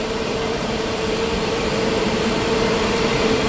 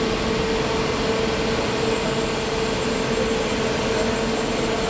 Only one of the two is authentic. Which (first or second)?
second